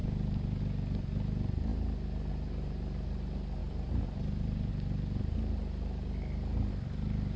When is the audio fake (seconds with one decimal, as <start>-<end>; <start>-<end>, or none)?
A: 0.0-0.6; 3.6-4.7